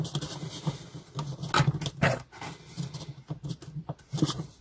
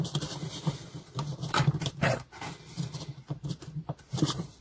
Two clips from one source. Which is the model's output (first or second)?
second